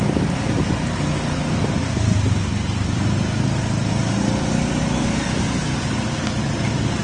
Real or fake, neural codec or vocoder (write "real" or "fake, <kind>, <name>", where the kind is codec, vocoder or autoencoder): real